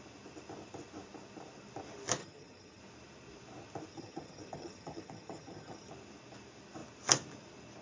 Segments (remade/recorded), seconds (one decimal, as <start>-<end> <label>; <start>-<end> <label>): 0.0-2.2 recorded; 2.2-2.8 remade; 2.8-3.9 recorded; 3.9-5.9 remade; 5.9-7.8 recorded